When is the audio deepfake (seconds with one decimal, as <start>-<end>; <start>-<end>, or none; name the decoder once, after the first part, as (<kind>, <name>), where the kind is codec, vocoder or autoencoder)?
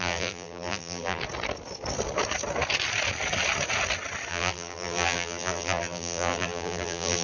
0.0-1.2 (vocoder, BigVGAN v2); 4.3-7.2